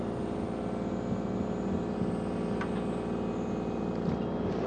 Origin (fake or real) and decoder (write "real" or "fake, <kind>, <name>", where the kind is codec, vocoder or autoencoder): real